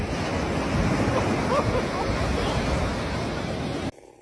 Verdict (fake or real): real